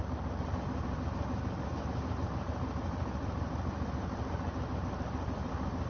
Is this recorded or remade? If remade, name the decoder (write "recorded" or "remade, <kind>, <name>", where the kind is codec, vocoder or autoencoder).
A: remade, vocoder, BigVGAN v2